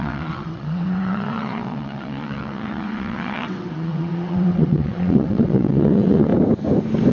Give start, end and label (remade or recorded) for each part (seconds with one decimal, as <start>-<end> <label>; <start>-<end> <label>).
0.0-6.3 remade; 6.3-7.1 recorded